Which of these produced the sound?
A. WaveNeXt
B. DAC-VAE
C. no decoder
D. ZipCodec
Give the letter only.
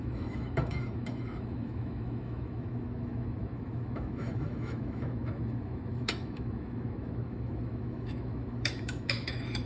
B